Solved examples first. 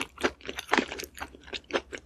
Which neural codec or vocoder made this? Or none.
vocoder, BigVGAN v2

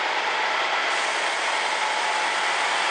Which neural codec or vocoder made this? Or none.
none